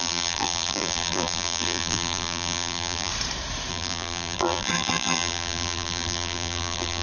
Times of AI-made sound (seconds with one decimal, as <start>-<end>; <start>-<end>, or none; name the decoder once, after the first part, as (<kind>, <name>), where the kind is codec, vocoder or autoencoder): 0.0-3.1 (vocoder, BigVGAN v2); 3.7-7.0